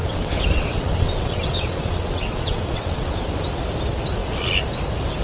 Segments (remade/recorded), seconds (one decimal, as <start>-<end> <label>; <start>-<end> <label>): 0.0-3.1 remade; 3.1-5.2 recorded